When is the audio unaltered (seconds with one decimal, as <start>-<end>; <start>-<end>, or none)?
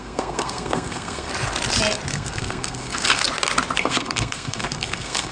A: 1.3-2.1; 3.2-3.8